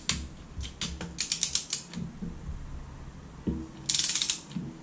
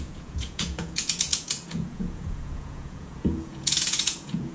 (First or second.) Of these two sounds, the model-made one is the second